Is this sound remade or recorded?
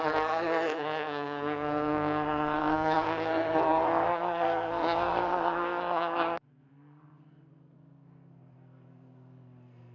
remade